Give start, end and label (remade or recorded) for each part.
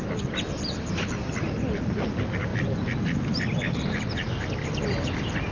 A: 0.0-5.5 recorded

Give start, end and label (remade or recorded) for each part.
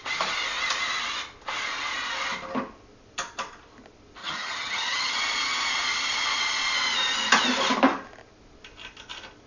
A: 0.0-4.2 recorded; 4.2-5.2 remade; 5.2-9.5 recorded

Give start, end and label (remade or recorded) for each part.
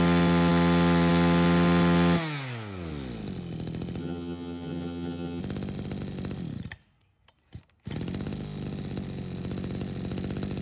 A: 0.0-4.0 recorded; 4.0-5.4 remade; 5.4-10.6 recorded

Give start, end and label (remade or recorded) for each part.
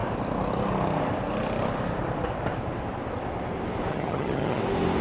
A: 0.0-3.9 recorded; 3.9-4.6 remade; 4.6-5.0 recorded